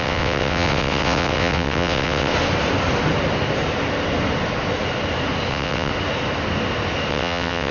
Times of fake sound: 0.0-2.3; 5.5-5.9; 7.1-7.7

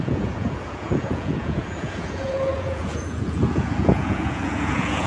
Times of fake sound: 0.0-5.1

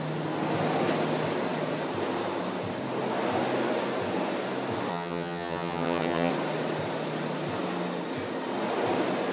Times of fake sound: 4.9-6.3